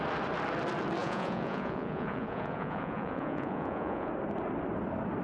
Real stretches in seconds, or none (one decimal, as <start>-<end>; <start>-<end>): 0.0-1.0; 4.1-5.2